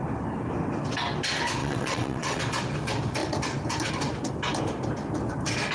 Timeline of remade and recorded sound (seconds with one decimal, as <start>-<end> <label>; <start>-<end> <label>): 0.0-1.6 recorded; 1.6-2.4 remade; 2.4-5.7 recorded